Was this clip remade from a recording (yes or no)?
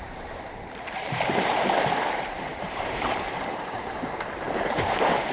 yes